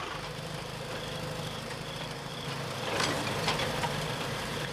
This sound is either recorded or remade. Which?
remade